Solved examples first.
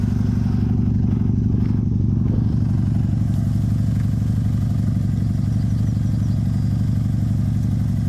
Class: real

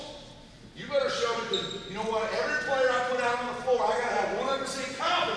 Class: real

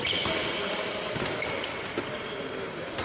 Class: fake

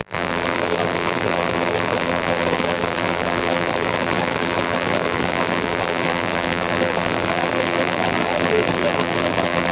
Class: fake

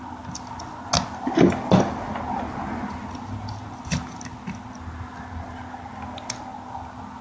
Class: real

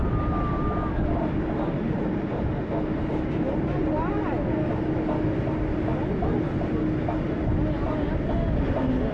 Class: real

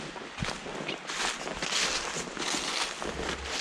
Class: real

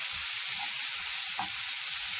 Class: real